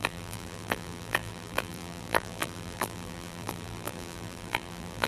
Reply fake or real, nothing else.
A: fake